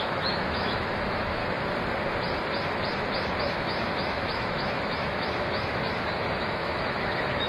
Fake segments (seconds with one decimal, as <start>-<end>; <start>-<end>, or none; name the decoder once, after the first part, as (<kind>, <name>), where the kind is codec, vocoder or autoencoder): 0.0-1.4 (autoencoder, DAC-VAE); 3.4-7.5